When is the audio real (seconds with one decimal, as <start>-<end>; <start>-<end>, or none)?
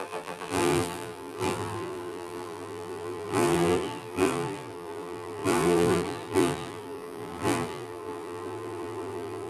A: none